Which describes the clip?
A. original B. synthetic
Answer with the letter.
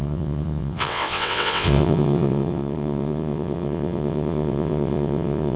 B